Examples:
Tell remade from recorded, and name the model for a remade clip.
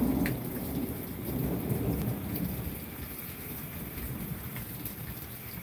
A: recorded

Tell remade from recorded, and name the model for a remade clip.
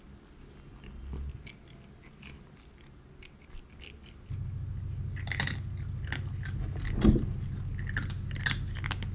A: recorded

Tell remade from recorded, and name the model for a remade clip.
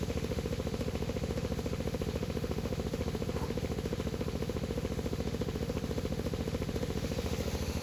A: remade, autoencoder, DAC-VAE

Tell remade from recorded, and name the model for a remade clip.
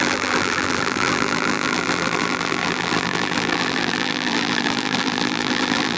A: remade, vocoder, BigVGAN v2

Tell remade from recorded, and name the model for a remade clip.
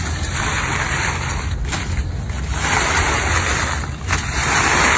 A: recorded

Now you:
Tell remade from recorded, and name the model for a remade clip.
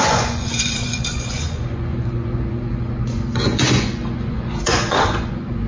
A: remade, vocoder, Vocos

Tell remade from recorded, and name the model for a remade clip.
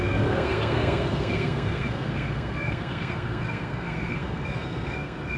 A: remade, codec, SNAC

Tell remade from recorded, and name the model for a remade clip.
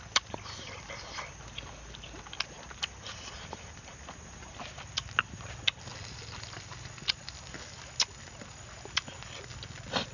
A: recorded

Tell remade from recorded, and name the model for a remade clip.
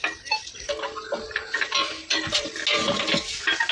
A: recorded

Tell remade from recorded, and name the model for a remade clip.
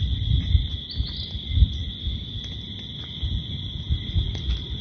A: recorded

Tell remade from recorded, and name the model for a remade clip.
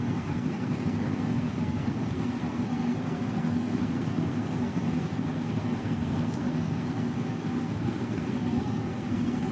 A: remade, codec, SNAC